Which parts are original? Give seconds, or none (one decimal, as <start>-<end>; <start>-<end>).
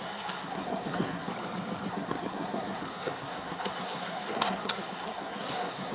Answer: 1.3-1.9